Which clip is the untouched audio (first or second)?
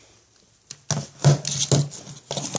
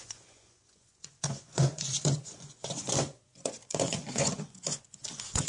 first